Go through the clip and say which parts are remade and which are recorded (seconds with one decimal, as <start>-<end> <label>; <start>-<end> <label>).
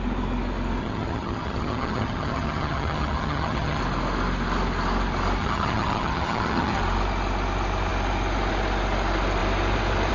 0.0-0.8 recorded; 0.8-3.8 remade; 3.8-5.4 recorded; 5.4-6.8 remade; 6.8-10.1 recorded